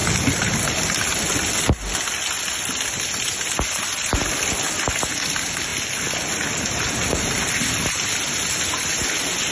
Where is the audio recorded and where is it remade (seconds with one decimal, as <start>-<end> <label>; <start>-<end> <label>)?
0.0-9.5 recorded